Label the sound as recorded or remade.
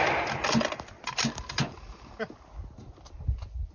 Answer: recorded